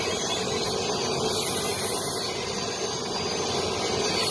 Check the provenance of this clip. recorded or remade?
recorded